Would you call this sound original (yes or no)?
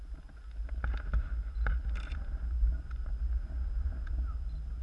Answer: yes